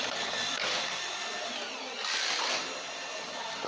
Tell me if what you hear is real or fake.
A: real